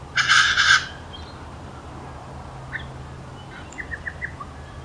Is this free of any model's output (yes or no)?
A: yes